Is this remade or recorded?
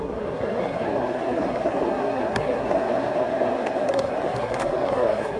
remade